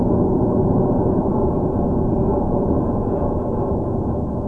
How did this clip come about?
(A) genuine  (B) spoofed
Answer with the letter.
B